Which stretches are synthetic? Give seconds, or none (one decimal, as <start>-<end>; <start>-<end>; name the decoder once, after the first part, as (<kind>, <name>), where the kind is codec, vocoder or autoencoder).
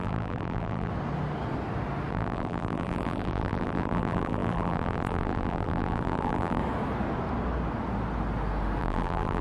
0.0-0.9 (vocoder, BigVGAN v2); 2.1-6.6; 8.8-9.4